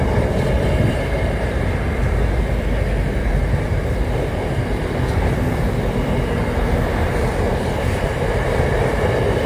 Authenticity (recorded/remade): remade